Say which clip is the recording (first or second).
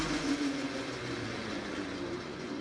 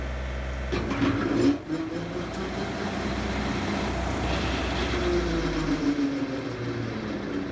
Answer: second